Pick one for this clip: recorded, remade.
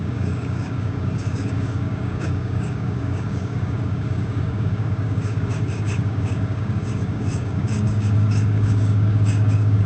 remade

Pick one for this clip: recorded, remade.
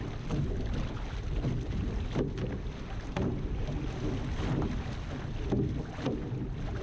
recorded